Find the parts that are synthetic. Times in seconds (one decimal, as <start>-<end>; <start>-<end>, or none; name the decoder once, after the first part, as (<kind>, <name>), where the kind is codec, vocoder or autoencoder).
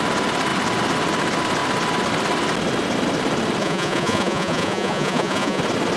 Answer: 3.6-5.6 (vocoder, Vocos)